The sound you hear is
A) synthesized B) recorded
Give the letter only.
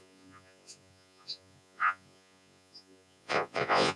A